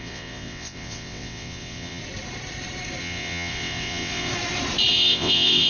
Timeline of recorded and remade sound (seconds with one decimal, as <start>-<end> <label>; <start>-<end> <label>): 0.0-2.0 remade; 2.0-3.0 recorded; 3.0-4.3 remade; 4.3-4.9 recorded; 4.9-5.7 remade